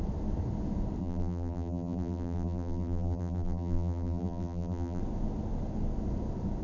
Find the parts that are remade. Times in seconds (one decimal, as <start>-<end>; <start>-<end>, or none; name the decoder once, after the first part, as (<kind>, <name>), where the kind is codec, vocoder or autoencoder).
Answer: 1.0-5.0 (vocoder, BigVGAN v2)